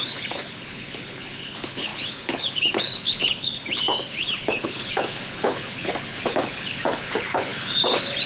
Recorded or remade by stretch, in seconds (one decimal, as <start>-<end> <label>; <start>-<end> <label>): 0.0-8.3 remade